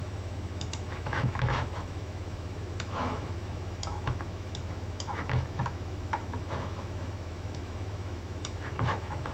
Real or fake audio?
fake